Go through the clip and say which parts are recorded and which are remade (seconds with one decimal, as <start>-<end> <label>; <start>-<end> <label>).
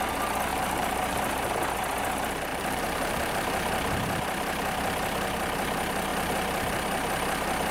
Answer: 0.0-0.5 recorded; 0.5-1.5 remade; 1.5-2.5 recorded; 2.5-3.3 remade; 3.3-7.7 recorded